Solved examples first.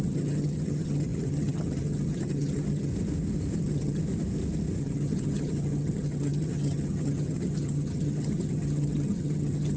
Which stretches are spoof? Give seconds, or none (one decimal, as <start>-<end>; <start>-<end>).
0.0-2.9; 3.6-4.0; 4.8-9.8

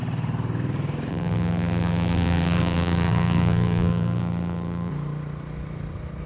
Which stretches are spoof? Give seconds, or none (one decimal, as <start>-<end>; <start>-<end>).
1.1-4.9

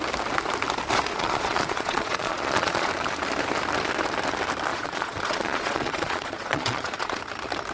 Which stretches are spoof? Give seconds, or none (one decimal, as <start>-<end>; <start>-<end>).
1.1-2.9; 4.7-7.2

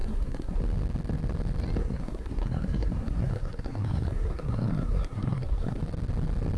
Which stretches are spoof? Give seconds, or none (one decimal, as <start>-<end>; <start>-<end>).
0.0-0.6; 1.8-5.8